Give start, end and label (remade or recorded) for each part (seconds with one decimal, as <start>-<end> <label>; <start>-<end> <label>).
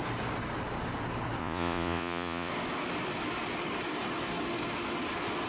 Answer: 0.0-1.4 recorded; 1.4-2.5 remade; 2.5-5.5 recorded